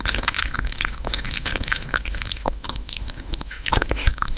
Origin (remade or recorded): remade